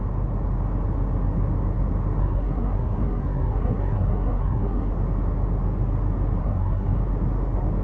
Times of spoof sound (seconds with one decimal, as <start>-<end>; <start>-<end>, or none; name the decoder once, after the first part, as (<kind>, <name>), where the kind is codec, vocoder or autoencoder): 2.2-4.9 (codec, SNAC); 6.4-7.0